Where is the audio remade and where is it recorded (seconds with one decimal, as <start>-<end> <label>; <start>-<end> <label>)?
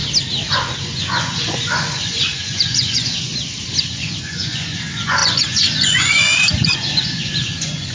0.0-0.8 recorded; 0.8-3.3 remade; 3.3-3.9 recorded; 3.9-7.9 remade